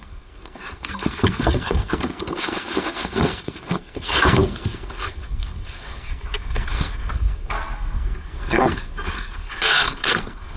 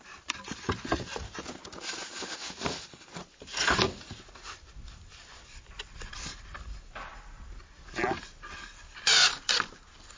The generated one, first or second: first